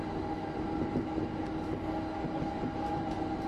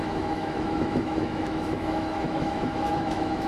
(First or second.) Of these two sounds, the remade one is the second